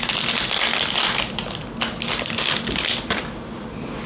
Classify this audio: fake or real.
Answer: real